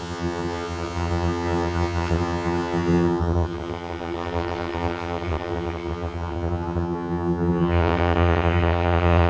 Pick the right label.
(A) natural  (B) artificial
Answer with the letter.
B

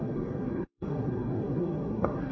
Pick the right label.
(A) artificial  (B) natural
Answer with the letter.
A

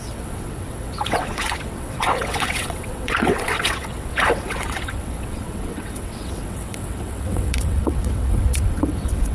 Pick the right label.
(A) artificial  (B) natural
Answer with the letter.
A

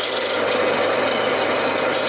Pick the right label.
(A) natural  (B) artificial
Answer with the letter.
A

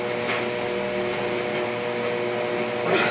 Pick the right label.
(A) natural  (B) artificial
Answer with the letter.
A